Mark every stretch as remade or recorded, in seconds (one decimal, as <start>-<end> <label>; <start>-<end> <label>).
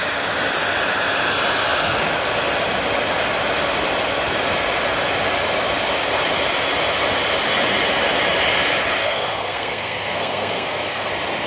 0.0-9.0 recorded; 9.0-11.1 remade; 11.1-11.5 recorded